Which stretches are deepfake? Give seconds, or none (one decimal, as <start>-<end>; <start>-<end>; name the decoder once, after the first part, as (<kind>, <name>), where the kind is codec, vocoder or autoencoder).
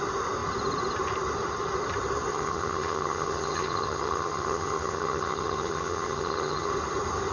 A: 2.3-6.7 (vocoder, HiFi-GAN)